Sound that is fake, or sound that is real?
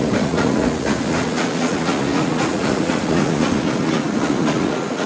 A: fake